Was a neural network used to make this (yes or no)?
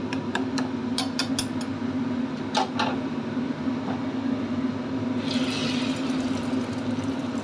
no